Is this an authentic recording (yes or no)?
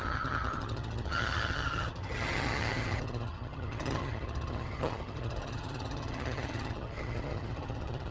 no